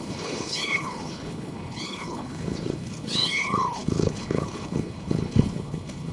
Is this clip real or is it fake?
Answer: fake